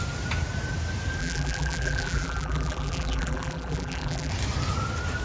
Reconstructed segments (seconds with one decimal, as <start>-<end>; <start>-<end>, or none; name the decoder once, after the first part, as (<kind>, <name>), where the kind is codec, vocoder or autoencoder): 1.2-4.3 (vocoder, BigVGAN v2)